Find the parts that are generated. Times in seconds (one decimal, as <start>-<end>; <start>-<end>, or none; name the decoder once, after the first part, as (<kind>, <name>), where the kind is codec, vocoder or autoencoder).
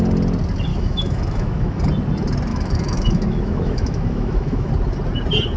0.7-1.8 (autoencoder, DAC-VAE); 2.5-4.7